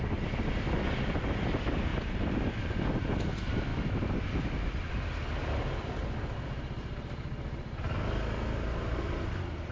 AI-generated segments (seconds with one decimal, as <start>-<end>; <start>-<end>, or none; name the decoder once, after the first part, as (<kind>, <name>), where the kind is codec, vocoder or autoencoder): none